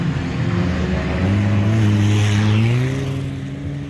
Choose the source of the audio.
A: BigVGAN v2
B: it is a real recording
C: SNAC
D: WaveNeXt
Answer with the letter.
B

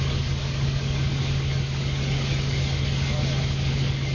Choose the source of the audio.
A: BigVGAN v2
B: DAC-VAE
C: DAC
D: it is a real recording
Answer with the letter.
C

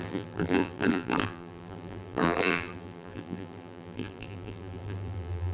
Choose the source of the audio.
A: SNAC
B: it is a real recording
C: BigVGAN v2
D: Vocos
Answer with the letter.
C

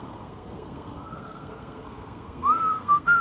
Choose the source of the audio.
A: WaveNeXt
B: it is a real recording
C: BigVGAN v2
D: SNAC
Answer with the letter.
D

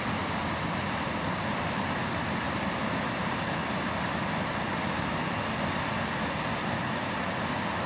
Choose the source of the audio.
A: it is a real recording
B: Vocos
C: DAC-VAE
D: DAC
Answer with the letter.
A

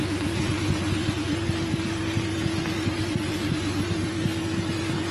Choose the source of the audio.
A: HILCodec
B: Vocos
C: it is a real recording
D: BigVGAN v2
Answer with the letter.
C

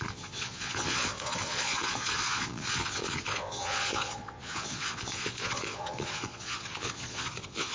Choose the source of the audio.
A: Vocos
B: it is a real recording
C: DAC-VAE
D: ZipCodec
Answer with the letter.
A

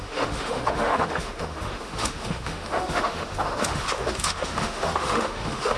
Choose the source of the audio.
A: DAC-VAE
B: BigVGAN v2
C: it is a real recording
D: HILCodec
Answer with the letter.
A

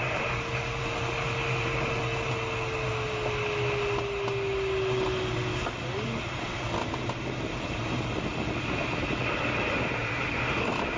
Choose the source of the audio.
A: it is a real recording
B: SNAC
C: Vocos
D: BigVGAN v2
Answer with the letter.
A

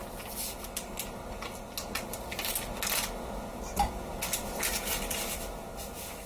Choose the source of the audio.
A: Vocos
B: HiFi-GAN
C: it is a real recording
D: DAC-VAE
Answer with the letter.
C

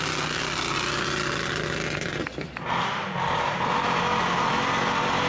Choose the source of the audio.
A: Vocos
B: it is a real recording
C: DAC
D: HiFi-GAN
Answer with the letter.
B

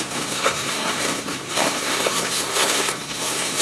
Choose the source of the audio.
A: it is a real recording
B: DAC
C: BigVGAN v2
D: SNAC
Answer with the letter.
D